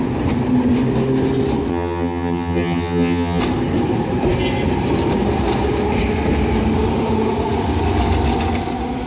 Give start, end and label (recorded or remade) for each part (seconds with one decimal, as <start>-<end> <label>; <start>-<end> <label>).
0.0-1.7 recorded; 1.7-3.4 remade; 3.4-9.1 recorded